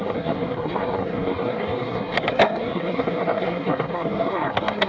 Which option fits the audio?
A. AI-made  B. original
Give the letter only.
A